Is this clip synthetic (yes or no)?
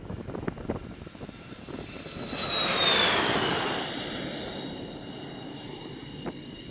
no